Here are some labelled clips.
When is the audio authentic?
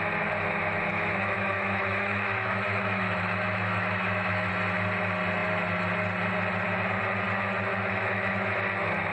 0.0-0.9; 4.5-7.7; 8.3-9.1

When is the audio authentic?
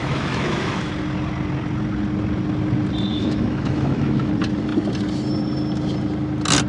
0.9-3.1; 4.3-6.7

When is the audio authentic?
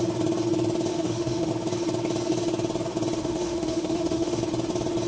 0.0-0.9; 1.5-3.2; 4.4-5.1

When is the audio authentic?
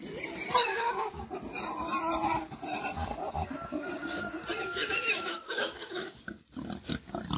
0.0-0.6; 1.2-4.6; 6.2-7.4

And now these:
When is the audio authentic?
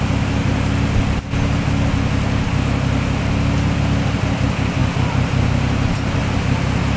0.0-7.0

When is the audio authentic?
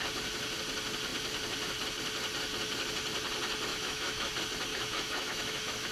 0.0-3.7; 4.3-4.7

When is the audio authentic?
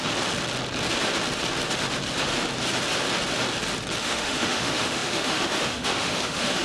0.0-4.0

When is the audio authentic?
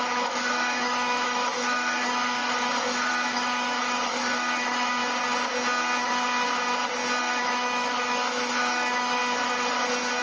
5.0-7.2; 9.2-10.2